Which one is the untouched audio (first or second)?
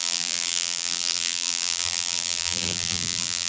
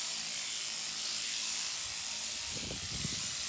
second